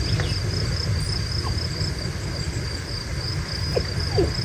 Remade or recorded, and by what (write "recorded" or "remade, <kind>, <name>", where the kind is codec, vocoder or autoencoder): recorded